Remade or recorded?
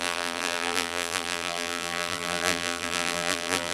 remade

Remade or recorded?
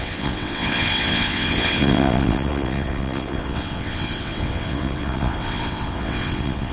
remade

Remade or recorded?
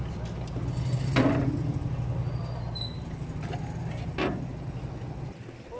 recorded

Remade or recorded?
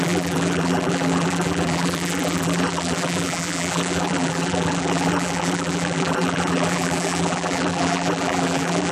remade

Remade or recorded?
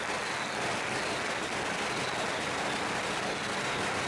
recorded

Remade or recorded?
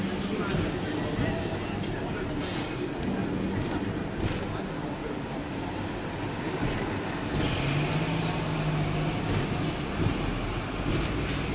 recorded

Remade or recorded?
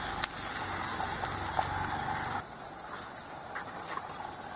recorded